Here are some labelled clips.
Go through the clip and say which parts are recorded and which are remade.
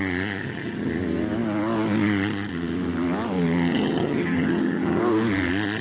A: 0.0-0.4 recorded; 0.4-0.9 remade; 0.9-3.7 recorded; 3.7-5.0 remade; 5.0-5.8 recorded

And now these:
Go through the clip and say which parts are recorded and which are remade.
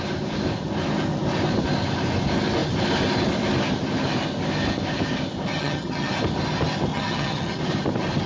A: 0.0-5.5 recorded; 5.5-6.1 remade; 6.1-6.9 recorded; 6.9-7.6 remade; 7.6-8.3 recorded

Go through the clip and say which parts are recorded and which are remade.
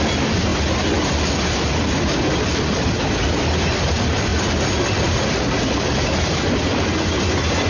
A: 0.0-7.7 recorded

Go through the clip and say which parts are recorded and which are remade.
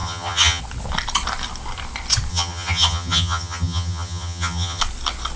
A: 0.0-0.6 remade; 0.6-2.3 recorded; 2.3-4.8 remade; 4.8-5.4 recorded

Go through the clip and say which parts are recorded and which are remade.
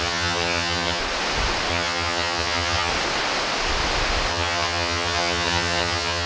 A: 0.0-1.0 remade; 1.0-1.7 recorded; 1.7-2.9 remade; 2.9-4.3 recorded; 4.3-6.3 remade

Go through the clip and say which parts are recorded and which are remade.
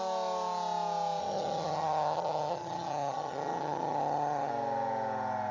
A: 0.0-1.2 recorded; 1.2-4.5 remade; 4.5-5.5 recorded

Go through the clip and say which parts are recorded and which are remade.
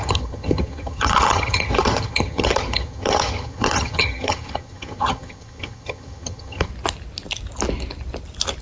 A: 0.0-6.7 remade; 6.7-8.6 recorded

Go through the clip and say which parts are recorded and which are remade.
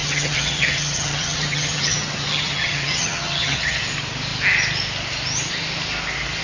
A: 0.0-3.8 remade; 3.8-6.4 recorded